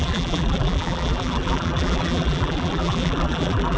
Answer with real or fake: fake